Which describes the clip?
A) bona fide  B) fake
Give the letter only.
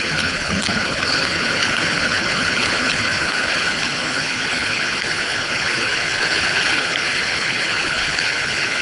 B